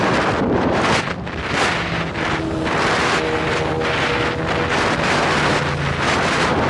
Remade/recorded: recorded